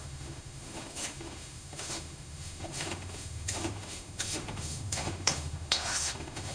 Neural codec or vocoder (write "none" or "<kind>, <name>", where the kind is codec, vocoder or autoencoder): autoencoder, DAC-VAE